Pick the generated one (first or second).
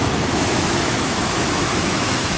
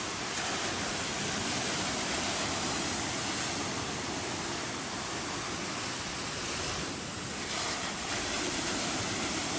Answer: first